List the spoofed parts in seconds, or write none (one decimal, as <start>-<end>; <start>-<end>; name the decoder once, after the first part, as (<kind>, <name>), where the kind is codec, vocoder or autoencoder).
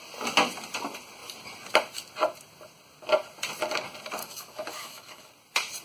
4.2-5.3 (autoencoder, DAC-VAE)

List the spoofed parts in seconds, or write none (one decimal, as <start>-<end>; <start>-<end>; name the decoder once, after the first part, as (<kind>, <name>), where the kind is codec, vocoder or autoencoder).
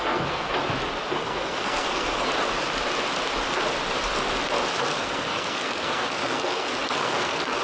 0.0-0.6 (codec, SNAC); 1.1-2.3; 4.8-7.6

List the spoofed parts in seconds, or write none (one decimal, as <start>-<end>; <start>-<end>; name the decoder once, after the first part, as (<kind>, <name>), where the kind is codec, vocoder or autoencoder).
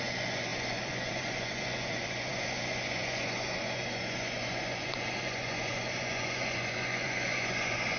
0.0-8.0 (vocoder, Vocos)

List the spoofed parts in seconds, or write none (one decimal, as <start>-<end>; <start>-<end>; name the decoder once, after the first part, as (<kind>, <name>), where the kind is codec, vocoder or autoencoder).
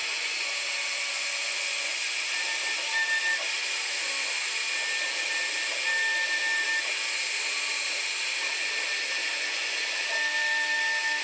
0.0-0.5 (vocoder, Vocos); 1.1-2.3; 9.2-10.0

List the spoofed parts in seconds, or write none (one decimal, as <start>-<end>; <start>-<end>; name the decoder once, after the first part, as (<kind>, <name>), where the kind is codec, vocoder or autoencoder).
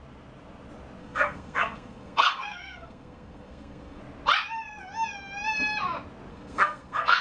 1.0-4.0 (codec, SNAC); 6.3-7.2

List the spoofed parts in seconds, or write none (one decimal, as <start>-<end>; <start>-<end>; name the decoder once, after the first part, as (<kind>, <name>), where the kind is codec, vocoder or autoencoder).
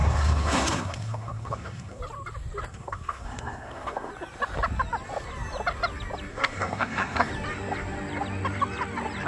0.0-2.0 (codec, SNAC); 2.7-4.1; 6.3-7.3